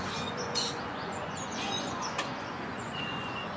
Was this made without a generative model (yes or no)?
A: no